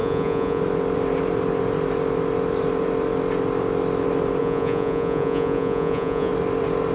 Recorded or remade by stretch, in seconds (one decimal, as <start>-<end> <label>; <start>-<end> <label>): 0.0-0.6 remade; 0.6-4.4 recorded; 4.4-6.3 remade; 6.3-6.9 recorded

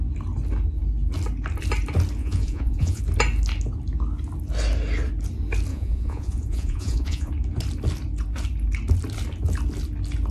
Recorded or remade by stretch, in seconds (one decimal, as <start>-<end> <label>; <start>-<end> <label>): 0.0-2.2 recorded; 2.2-3.0 remade; 3.0-5.7 recorded; 5.7-7.3 remade; 7.3-10.3 recorded

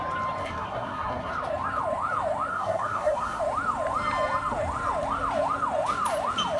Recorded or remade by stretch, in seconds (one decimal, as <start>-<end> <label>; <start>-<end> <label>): 0.0-0.4 recorded; 0.4-1.3 remade; 1.3-2.5 recorded; 2.5-3.4 remade; 3.4-6.6 recorded